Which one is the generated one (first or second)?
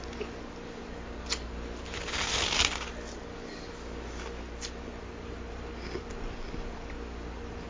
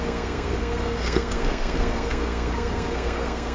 second